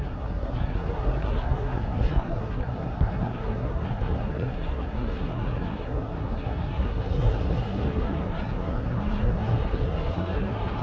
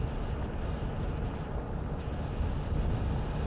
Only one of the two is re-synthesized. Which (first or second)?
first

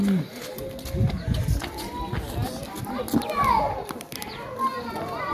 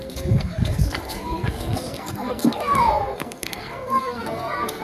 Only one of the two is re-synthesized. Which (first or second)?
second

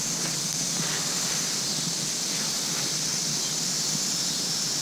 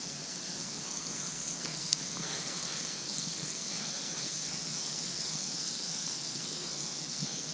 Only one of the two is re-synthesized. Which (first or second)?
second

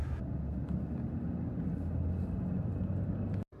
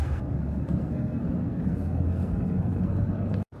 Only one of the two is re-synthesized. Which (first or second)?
second